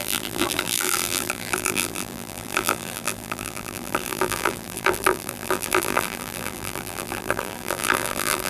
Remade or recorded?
remade